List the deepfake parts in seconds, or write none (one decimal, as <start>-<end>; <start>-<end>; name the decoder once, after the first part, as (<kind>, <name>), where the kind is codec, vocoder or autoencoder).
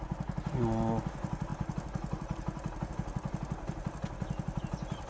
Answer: none